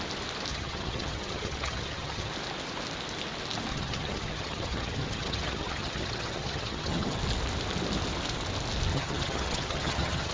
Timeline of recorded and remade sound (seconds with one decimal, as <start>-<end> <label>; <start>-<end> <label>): 0.0-0.5 recorded; 0.5-2.3 remade; 2.3-3.7 recorded; 3.7-7.2 remade; 7.2-8.9 recorded; 8.9-10.3 remade